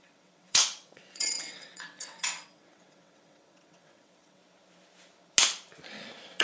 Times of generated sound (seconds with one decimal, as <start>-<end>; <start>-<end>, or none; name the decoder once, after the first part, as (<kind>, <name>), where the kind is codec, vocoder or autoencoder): 0.0-4.4 (vocoder, WaveNeXt)